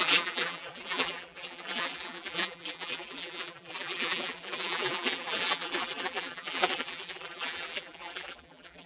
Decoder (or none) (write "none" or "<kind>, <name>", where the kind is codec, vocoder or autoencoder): vocoder, BigVGAN v2